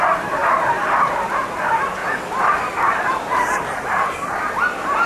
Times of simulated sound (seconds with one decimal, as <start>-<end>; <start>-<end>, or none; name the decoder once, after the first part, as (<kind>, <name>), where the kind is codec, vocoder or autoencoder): 0.4-1.5 (vocoder, BigVGAN v2); 2.0-3.8